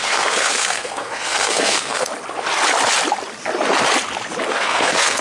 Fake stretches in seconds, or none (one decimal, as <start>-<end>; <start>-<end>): 0.0-2.1; 4.5-5.2